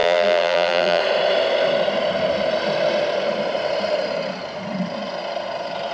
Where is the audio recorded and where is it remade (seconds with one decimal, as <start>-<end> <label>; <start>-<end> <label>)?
0.0-1.0 remade; 1.0-5.9 recorded